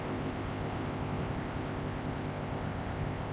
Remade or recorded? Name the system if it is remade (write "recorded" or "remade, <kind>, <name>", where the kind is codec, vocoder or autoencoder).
remade, codec, ZipCodec